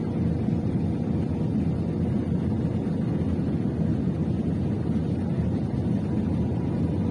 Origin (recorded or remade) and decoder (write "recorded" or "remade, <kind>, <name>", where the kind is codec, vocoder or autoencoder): recorded